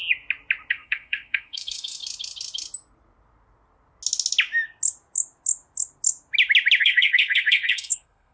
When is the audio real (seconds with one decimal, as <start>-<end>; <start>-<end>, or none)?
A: 0.0-0.7; 2.0-6.8